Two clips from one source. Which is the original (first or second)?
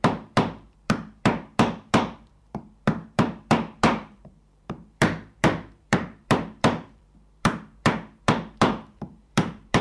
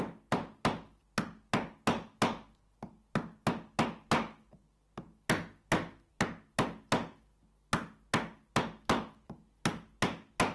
second